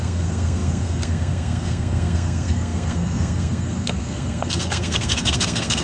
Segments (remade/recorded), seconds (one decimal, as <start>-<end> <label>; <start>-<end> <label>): 0.0-5.8 remade